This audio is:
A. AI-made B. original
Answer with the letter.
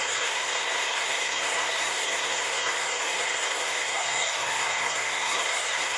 A